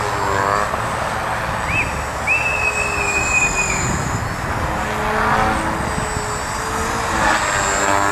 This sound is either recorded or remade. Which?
recorded